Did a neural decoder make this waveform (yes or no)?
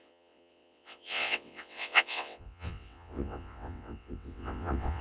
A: yes